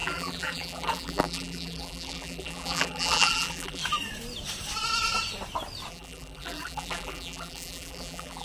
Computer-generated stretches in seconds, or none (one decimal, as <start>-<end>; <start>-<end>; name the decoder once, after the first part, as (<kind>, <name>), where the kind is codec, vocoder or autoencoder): 0.0-3.8 (vocoder, BigVGAN v2); 5.9-8.4